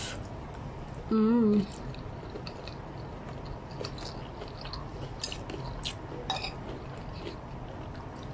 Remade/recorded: recorded